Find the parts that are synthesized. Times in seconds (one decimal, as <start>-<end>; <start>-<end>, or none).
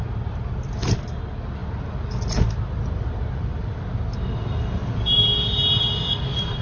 4.8-5.4